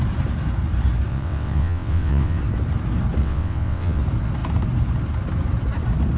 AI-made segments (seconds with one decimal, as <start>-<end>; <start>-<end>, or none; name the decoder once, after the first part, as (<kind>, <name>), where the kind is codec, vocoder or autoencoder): 1.1-2.4 (vocoder, WaveNeXt); 3.2-4.0